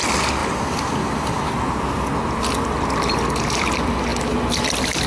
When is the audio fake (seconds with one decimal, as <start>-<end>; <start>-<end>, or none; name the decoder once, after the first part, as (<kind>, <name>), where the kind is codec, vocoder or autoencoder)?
none